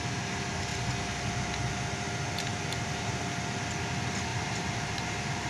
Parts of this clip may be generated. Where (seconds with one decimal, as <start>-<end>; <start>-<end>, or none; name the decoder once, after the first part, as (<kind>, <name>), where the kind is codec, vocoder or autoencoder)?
2.5-3.4 (vocoder, BigVGAN v2); 4.3-5.5